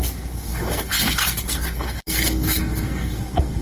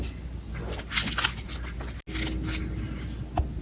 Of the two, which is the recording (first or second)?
second